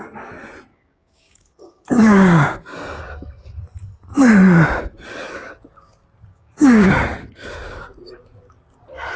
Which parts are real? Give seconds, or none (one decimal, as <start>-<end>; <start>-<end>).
0.0-0.7; 2.6-6.3; 6.9-9.2